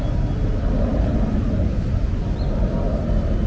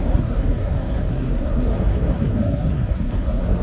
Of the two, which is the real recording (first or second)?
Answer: first